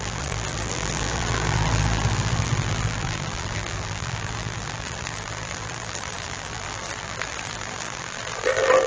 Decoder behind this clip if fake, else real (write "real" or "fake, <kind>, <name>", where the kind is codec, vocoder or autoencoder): fake, vocoder, BigVGAN v2